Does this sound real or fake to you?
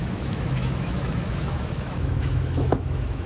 fake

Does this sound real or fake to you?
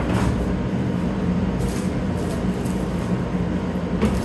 real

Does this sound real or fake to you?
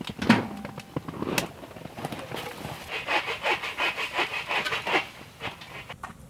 real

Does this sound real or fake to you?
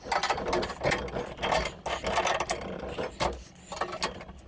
real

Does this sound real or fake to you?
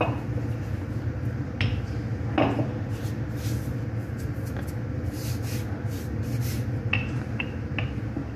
real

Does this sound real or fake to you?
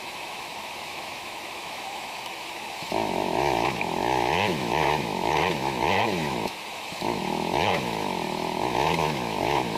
fake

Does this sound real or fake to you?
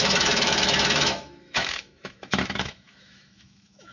fake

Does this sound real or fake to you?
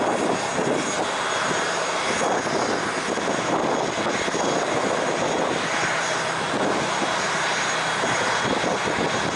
real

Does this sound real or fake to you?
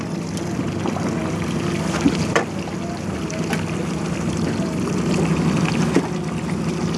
real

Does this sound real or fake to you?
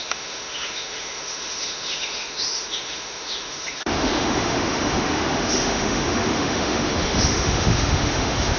fake